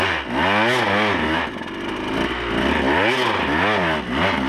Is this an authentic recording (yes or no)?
yes